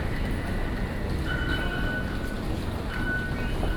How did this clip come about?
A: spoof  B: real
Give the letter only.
B